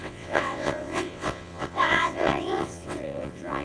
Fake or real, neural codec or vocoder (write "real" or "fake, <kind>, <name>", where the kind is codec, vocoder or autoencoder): fake, vocoder, WaveNeXt